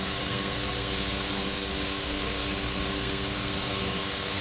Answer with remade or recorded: remade